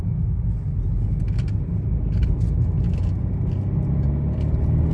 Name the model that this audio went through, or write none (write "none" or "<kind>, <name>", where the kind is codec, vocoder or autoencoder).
none